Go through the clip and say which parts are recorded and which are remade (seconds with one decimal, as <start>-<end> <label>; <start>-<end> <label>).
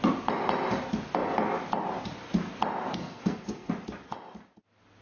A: 0.0-3.0 recorded; 3.0-3.7 remade; 3.7-5.0 recorded